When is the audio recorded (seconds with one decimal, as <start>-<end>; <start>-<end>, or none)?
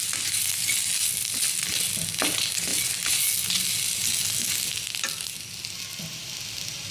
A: 0.0-6.9